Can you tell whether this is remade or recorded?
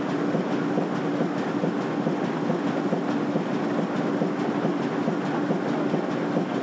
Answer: recorded